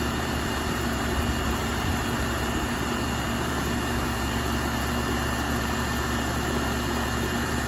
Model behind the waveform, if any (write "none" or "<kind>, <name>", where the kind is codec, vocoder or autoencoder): vocoder, BigVGAN v2